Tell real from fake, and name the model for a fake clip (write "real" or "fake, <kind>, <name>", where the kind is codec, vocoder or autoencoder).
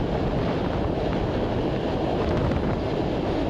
real